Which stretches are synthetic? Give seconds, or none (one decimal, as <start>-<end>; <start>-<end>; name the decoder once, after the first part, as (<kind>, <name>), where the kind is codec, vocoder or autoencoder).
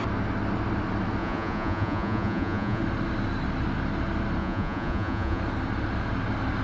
1.2-2.8 (vocoder, Vocos); 4.4-5.4